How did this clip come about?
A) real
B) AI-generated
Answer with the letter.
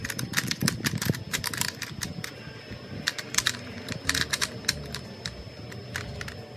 A